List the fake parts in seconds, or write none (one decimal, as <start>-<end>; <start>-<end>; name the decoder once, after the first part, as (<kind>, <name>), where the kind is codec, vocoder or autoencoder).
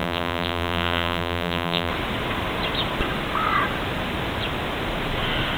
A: 0.0-1.9 (vocoder, BigVGAN v2)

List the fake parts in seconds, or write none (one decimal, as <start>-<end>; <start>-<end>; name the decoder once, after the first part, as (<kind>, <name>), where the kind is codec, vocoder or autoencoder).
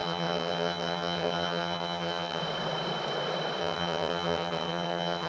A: 0.0-2.4 (vocoder, HiFi-GAN); 3.6-5.3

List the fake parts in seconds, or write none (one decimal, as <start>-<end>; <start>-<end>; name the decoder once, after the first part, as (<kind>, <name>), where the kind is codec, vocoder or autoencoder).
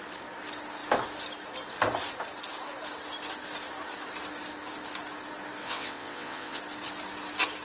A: 5.6-6.6 (vocoder, WaveNeXt)